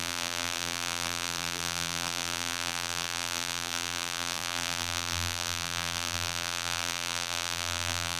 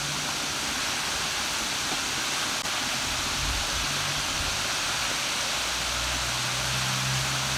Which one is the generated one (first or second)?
first